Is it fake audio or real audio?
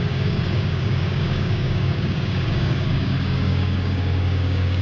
fake